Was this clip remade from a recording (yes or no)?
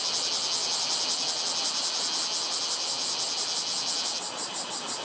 no